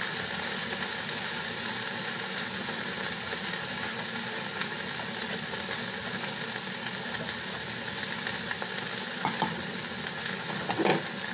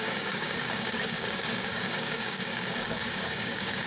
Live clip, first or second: first